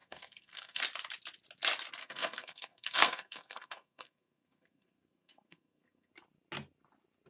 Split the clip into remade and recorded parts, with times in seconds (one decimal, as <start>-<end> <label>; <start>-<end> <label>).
0.0-0.8 remade; 0.8-2.0 recorded; 2.0-6.1 remade; 6.1-7.3 recorded